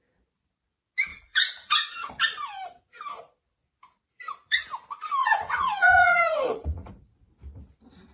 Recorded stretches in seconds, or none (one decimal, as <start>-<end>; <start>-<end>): 0.0-1.1; 2.1-5.2; 6.9-8.1